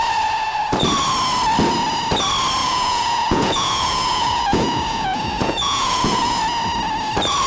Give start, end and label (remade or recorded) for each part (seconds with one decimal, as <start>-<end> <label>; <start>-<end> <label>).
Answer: 0.0-2.6 recorded; 2.6-6.4 remade; 6.4-7.5 recorded